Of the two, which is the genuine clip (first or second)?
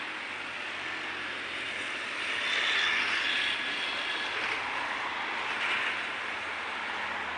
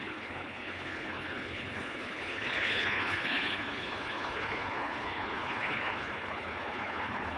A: first